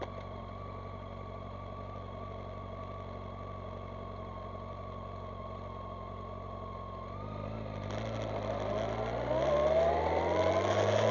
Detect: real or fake real